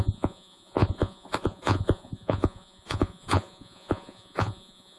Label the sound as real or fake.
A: fake